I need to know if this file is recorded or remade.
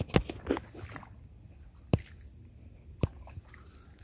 recorded